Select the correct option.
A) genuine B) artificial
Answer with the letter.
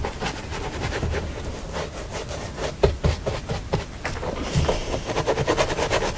B